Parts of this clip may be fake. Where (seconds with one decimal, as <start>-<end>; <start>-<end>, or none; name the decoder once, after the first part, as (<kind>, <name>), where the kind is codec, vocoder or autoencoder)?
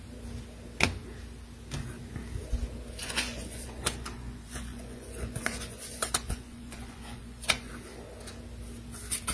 3.0-7.7 (vocoder, Vocos)